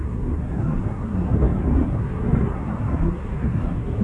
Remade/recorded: remade